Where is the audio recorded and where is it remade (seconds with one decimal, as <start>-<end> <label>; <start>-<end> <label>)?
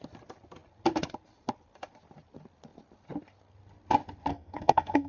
0.0-4.3 recorded; 4.3-5.1 remade